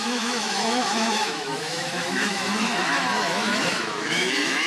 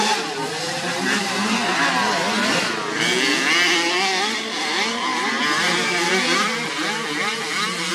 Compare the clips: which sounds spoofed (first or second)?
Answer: first